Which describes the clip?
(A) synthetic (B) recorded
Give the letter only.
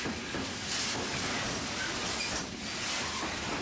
A